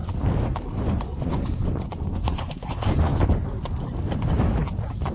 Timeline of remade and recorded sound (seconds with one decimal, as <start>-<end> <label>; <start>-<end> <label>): 0.0-0.8 recorded; 0.8-3.1 remade; 3.1-5.1 recorded